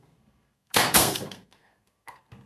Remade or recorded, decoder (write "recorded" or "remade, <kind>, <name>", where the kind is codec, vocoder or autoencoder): remade, codec, SNAC